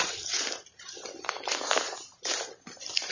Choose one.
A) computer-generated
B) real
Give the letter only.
A